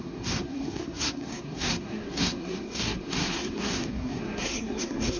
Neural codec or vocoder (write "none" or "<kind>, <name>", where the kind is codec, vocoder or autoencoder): codec, SNAC